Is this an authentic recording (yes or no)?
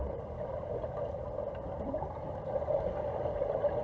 yes